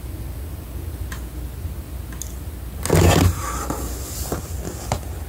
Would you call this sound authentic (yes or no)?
yes